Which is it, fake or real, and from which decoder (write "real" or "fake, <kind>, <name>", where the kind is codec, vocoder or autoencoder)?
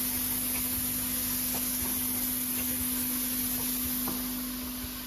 real